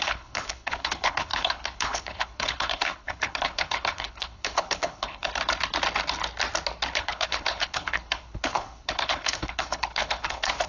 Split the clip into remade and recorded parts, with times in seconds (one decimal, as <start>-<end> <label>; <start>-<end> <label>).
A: 0.0-5.3 remade; 5.3-6.9 recorded; 6.9-10.7 remade